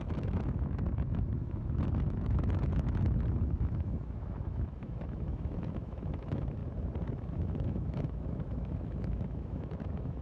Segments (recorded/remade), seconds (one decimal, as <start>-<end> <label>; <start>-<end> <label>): 0.0-6.6 remade; 6.6-7.1 recorded; 7.1-10.2 remade